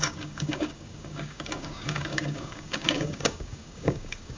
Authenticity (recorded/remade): remade